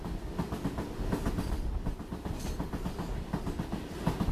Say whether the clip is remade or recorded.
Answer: recorded